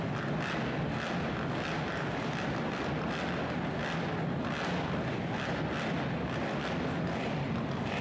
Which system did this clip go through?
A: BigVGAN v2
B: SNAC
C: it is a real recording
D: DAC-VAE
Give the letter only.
C